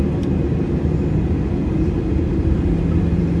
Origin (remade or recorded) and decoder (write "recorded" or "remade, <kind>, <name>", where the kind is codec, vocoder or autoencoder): recorded